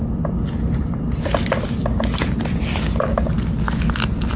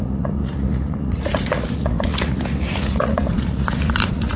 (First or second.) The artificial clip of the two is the second